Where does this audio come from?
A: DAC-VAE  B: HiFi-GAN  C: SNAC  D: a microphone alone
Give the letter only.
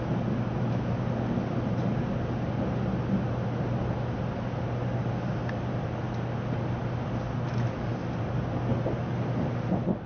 D